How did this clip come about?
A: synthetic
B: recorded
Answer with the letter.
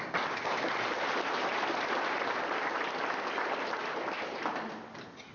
B